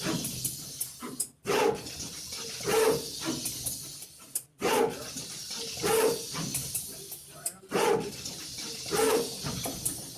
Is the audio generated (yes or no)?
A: no